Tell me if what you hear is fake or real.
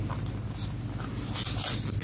real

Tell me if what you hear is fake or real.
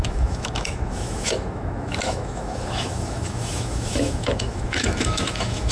fake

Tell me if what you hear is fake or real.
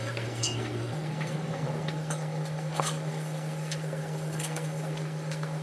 fake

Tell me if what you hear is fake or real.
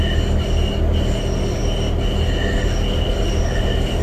real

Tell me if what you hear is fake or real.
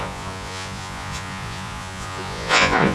fake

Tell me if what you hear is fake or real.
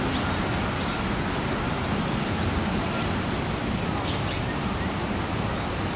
real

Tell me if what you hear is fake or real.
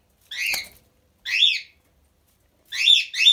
real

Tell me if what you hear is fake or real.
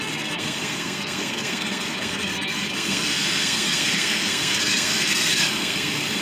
fake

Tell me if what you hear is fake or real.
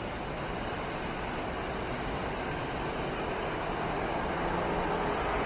real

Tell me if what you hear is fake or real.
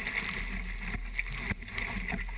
real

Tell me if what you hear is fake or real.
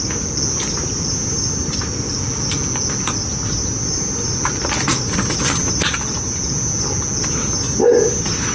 real